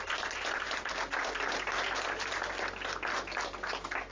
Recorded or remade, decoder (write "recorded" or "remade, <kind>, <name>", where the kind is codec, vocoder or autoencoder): recorded